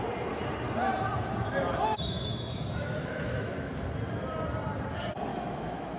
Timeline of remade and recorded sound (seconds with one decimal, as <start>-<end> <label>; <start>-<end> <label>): 0.0-1.9 recorded; 1.9-3.7 remade; 3.7-5.3 recorded; 5.3-6.0 remade